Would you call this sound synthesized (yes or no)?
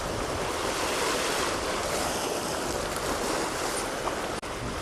no